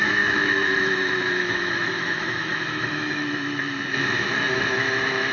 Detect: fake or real fake